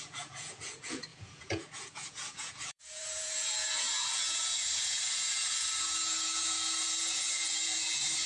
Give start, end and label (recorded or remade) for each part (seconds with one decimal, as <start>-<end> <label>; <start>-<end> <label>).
0.0-8.3 remade